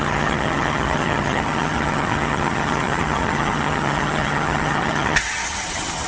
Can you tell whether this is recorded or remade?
remade